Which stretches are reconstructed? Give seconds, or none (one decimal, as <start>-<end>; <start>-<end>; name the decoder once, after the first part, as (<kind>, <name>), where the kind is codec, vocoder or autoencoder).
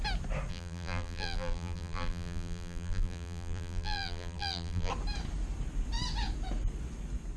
0.5-4.9 (vocoder, BigVGAN v2)